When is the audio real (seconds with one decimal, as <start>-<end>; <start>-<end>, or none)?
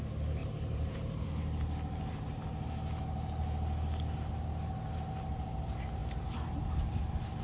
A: 0.0-0.4; 1.3-7.4